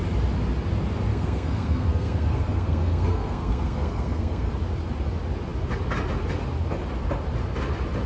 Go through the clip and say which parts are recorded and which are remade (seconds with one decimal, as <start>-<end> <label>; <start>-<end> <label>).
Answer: 0.0-1.1 recorded; 1.1-4.5 remade; 4.5-8.1 recorded